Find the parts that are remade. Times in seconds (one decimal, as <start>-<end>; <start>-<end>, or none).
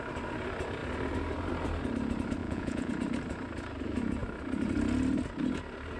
2.4-2.9